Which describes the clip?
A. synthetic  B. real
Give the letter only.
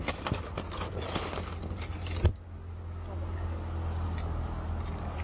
B